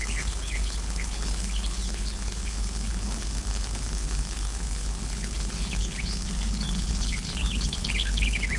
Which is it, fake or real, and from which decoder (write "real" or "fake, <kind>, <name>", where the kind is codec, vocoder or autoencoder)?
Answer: fake, codec, HILCodec